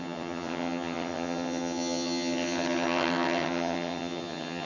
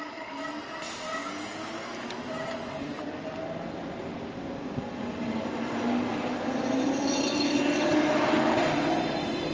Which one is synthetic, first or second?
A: first